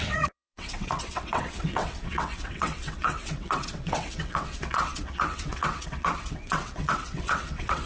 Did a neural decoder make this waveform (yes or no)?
yes